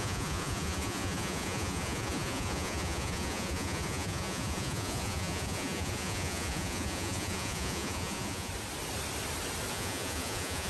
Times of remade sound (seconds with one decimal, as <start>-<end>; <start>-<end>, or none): 0.0-8.5; 9.7-10.7